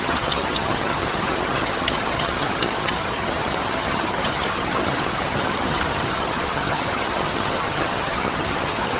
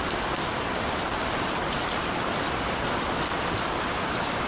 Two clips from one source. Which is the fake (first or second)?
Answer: first